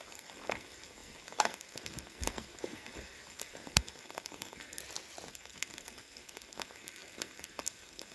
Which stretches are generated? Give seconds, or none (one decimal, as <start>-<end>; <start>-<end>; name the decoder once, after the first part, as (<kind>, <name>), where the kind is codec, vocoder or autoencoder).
0.0-4.8 (codec, SNAC); 5.3-8.1